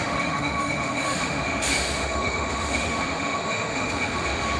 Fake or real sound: fake